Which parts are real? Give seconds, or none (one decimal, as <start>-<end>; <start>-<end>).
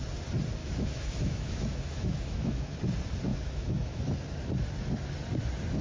0.0-0.6; 2.8-3.3; 4.0-5.8